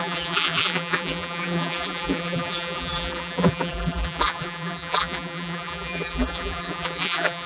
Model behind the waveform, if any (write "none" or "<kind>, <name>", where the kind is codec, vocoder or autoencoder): vocoder, BigVGAN v2